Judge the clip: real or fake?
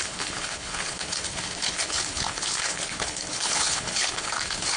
fake